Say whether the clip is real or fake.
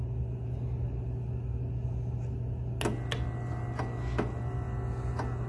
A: real